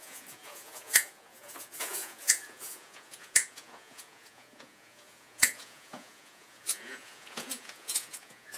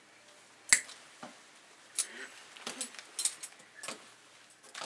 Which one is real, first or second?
second